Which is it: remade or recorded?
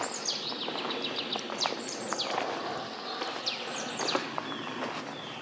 recorded